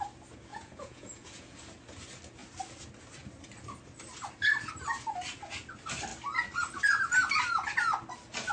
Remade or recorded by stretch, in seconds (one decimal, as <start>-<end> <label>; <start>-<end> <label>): 0.0-0.5 recorded; 0.5-1.6 remade; 1.6-8.5 recorded